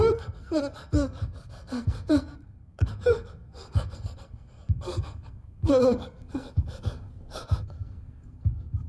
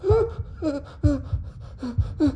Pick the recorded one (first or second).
second